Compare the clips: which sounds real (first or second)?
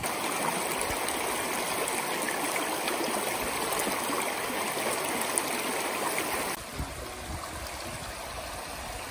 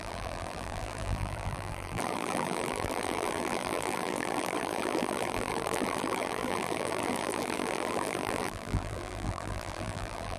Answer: first